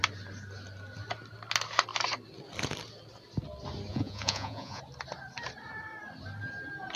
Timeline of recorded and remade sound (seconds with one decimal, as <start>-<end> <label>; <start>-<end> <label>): 0.0-3.9 recorded; 3.9-4.8 remade; 4.8-7.0 recorded